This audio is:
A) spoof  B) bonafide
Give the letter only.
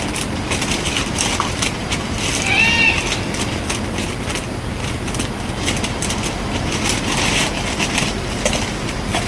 B